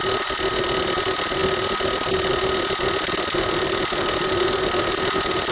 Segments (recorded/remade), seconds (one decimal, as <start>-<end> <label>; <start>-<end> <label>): 0.0-5.5 recorded